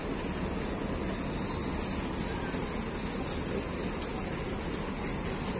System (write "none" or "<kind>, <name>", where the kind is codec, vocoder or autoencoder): none